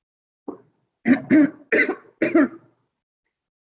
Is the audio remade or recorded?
recorded